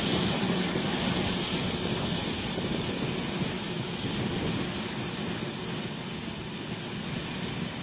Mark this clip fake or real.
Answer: real